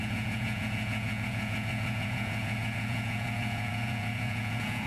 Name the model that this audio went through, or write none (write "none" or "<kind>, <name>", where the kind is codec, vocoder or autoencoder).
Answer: vocoder, Vocos